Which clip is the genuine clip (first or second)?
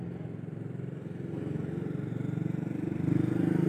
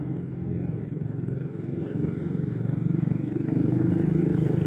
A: first